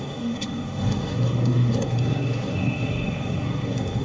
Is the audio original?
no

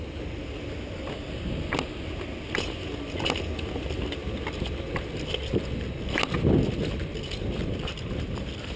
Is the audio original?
yes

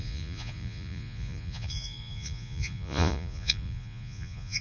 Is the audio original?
no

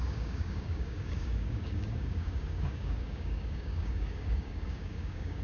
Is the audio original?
no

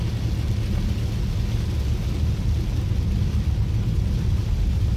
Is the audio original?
yes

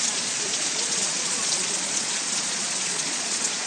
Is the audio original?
no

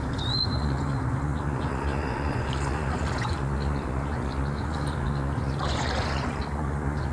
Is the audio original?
no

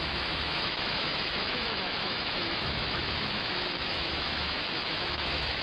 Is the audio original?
no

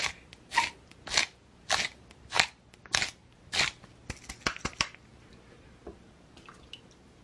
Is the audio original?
yes